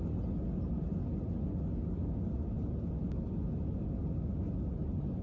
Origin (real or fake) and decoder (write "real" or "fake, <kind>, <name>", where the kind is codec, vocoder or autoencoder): real